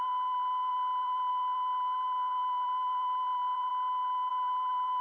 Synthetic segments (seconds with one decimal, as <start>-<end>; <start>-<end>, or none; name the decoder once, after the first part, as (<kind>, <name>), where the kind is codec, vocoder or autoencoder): 0.0-3.7 (vocoder, BigVGAN v2); 4.3-5.0